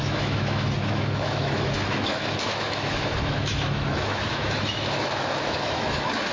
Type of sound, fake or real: fake